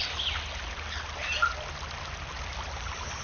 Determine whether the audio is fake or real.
real